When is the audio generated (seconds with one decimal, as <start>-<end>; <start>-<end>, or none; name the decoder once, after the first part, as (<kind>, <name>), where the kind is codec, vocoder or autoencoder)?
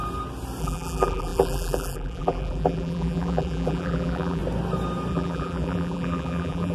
0.6-4.4 (vocoder, BigVGAN v2); 5.1-6.7